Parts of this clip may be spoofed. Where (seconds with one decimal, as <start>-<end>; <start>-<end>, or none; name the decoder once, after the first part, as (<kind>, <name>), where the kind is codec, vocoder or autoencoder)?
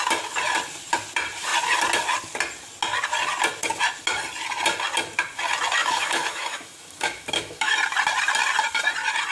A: 5.8-7.7 (autoencoder, DAC-VAE)